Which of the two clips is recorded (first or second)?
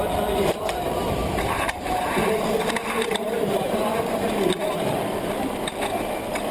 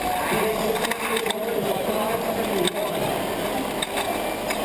second